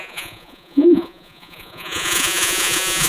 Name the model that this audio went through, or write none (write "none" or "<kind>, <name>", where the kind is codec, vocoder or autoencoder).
vocoder, Vocos